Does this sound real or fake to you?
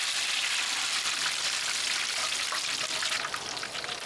real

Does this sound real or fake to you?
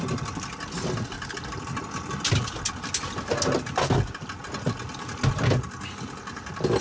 real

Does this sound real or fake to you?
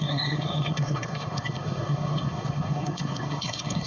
fake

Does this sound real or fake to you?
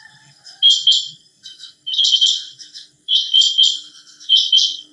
fake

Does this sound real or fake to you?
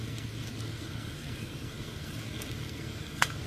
fake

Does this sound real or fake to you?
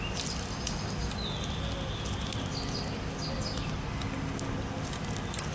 real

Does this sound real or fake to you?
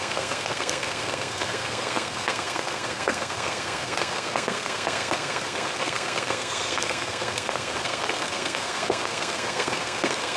fake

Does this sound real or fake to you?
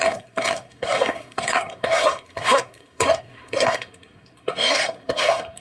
fake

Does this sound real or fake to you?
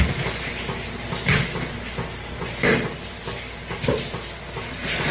real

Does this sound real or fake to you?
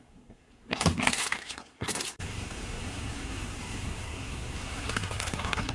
fake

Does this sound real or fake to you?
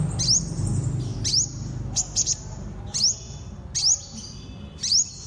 real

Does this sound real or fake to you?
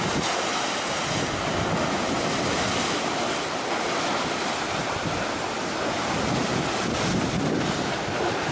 real